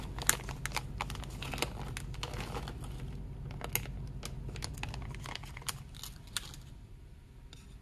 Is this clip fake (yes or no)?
no